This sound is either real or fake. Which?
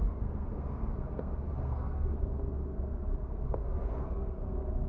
fake